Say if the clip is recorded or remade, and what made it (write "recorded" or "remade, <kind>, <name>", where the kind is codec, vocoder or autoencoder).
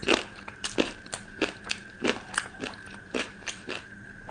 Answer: remade, vocoder, BigVGAN v2